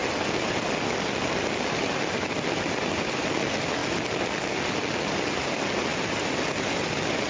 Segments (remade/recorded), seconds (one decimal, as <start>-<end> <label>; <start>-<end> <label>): 0.0-7.3 recorded